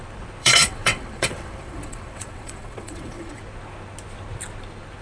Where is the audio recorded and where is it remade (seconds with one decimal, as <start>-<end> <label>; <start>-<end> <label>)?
0.0-0.4 recorded; 0.4-3.4 remade; 3.4-5.0 recorded